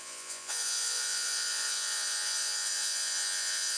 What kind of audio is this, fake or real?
fake